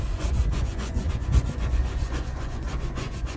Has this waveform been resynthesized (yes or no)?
yes